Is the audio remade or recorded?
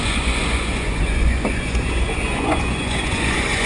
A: remade